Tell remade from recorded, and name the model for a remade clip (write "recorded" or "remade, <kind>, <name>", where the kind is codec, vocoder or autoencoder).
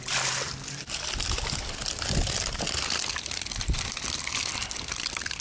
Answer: recorded